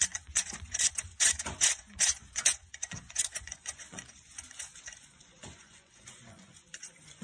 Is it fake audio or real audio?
fake